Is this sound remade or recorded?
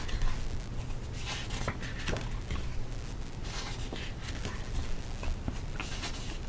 recorded